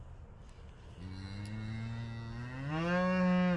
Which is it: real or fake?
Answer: real